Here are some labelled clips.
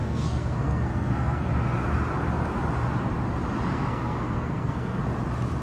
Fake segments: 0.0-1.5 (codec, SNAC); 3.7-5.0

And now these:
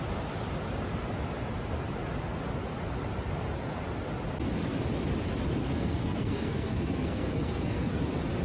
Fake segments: 5.6-8.0 (codec, SNAC)

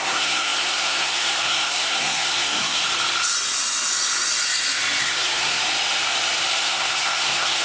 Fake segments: 0.0-2.8 (codec, SNAC); 5.0-5.6; 6.5-7.6

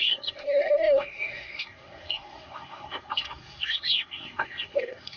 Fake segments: 0.0-5.2 (codec, SNAC)

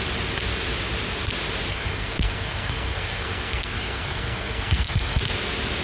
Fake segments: 1.7-5.2 (codec, SNAC)

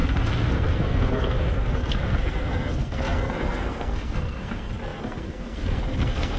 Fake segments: 0.0-6.4 (codec, SNAC)

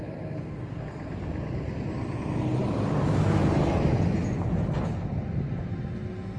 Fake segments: none

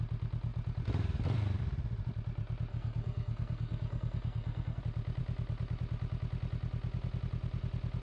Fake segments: 2.7-4.8 (codec, SNAC)